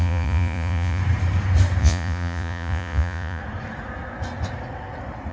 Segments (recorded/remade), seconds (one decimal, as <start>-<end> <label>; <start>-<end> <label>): 0.0-1.0 remade; 1.0-1.8 recorded; 1.8-3.4 remade; 3.4-5.3 recorded